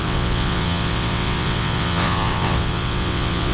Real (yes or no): no